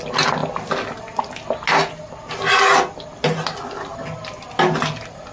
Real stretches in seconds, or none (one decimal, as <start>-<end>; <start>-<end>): 0.0-5.3